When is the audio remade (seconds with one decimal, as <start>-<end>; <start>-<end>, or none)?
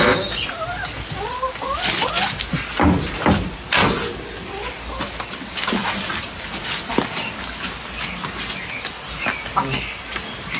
none